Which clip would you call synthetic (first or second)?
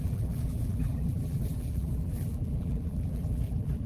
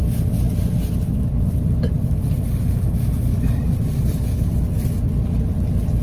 first